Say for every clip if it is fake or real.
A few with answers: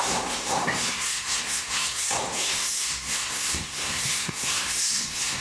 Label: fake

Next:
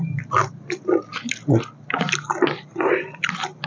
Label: real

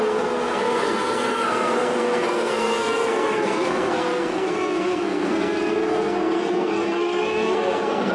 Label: fake